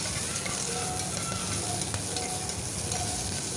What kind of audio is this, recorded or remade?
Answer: recorded